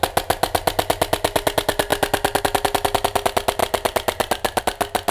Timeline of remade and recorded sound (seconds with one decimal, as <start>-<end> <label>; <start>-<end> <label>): 0.0-5.1 recorded

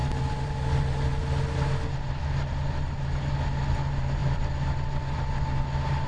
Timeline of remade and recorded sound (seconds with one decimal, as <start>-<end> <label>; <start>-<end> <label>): 0.0-6.1 recorded

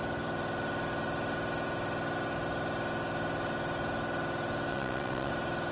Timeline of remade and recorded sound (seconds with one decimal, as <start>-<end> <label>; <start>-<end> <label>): 0.0-4.7 recorded; 4.7-5.3 remade; 5.3-5.7 recorded

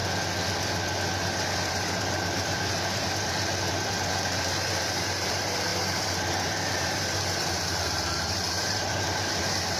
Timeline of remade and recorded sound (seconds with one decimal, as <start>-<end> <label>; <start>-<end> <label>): 0.0-1.7 recorded; 1.7-9.8 remade

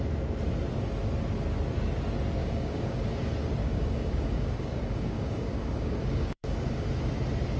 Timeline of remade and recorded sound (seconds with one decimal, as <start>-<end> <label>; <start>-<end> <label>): 0.0-2.4 recorded; 2.4-3.1 remade; 3.1-3.6 recorded; 3.6-6.9 remade; 6.9-7.6 recorded

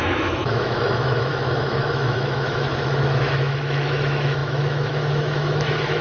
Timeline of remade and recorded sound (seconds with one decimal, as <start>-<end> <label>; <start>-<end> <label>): 0.0-6.0 remade

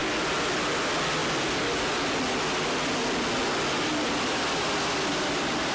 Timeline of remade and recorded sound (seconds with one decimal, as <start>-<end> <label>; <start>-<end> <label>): 0.0-5.7 recorded

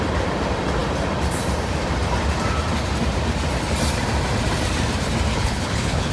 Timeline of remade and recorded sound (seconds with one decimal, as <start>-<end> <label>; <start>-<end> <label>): 0.0-5.3 recorded; 5.3-6.1 remade